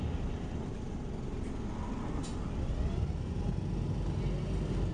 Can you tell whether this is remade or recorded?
recorded